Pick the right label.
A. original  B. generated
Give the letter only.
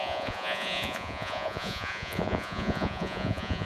B